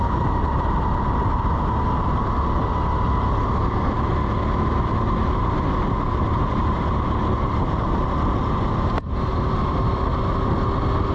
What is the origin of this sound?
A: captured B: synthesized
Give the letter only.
A